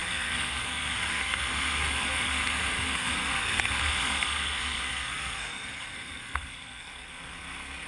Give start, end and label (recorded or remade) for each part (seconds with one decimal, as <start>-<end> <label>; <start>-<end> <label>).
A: 0.0-7.9 remade